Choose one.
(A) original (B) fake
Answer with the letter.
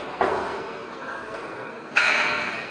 B